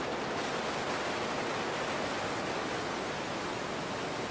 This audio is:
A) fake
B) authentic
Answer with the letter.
B